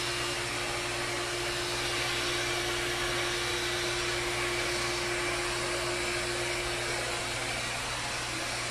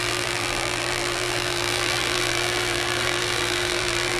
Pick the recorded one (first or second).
first